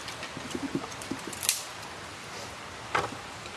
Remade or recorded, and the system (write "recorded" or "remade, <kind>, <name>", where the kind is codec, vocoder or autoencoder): recorded